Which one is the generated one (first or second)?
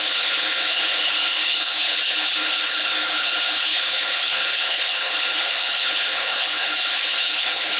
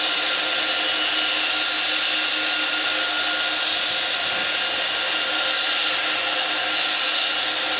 first